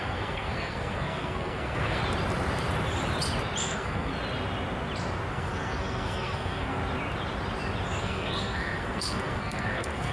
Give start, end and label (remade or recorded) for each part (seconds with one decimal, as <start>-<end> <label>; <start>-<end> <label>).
0.0-2.0 remade; 2.0-3.6 recorded; 3.6-4.1 remade; 4.1-5.3 recorded; 5.3-6.8 remade; 6.8-8.0 recorded; 8.0-10.1 remade